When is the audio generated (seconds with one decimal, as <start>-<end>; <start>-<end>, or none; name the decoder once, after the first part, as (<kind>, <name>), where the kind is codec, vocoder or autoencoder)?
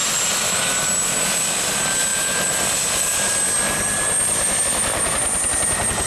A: none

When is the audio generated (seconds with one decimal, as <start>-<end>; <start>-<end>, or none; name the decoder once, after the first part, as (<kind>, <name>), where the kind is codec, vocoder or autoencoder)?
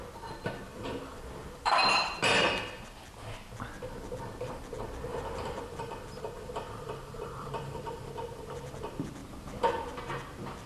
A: 0.7-2.1 (vocoder, BigVGAN v2); 5.1-8.1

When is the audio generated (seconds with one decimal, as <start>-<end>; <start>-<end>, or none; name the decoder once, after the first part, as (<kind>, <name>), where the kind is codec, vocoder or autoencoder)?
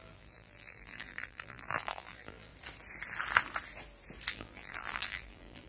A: 0.0-2.5 (vocoder, BigVGAN v2); 4.3-5.7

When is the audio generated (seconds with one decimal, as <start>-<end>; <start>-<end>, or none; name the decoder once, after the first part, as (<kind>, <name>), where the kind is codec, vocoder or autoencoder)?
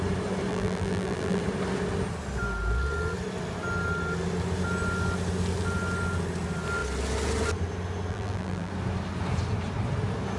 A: 0.5-1.4 (vocoder, BigVGAN v2); 8.1-8.7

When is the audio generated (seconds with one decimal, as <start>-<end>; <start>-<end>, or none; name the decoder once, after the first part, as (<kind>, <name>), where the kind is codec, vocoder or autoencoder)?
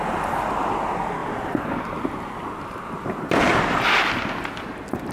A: 1.2-4.0 (vocoder, BigVGAN v2)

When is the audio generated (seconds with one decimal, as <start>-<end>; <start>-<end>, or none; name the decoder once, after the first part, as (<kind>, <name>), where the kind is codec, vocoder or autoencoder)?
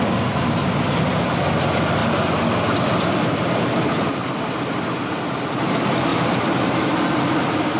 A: 6.1-6.7 (vocoder, BigVGAN v2)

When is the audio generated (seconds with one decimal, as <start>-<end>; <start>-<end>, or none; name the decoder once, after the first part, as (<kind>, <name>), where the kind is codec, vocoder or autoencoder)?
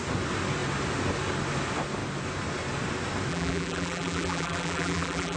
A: 3.3-5.4 (vocoder, BigVGAN v2)